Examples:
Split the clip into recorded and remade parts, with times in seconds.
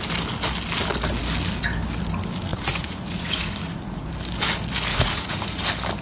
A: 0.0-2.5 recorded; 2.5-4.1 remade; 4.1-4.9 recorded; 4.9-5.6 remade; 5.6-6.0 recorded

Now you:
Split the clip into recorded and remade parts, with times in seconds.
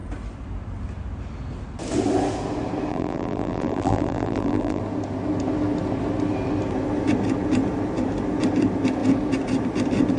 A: 0.0-2.9 recorded; 2.9-4.8 remade; 4.8-10.2 recorded